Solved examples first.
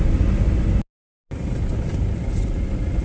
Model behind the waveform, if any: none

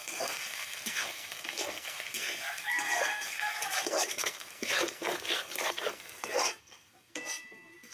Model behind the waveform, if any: codec, SNAC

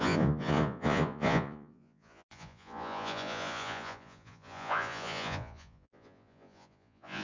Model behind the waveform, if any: vocoder, Vocos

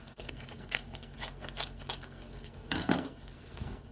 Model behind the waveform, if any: codec, SNAC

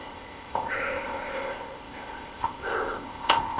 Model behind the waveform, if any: codec, ZipCodec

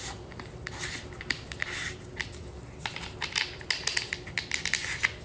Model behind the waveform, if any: none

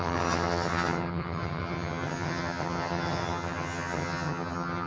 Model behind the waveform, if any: vocoder, HiFi-GAN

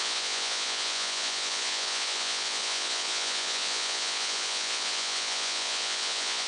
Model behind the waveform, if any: vocoder, Vocos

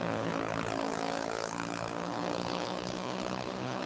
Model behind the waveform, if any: codec, HILCodec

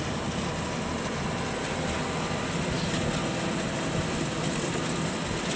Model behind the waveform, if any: none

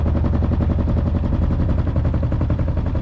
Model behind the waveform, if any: none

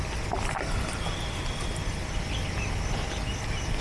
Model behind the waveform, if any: none